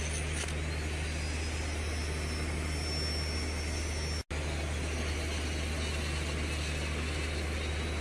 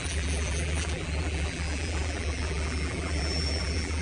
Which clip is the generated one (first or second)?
second